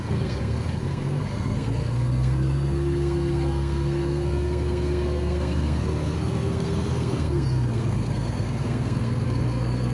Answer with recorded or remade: remade